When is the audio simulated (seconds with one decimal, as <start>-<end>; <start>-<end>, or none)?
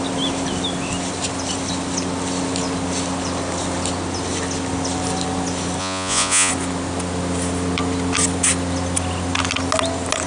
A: 5.8-6.5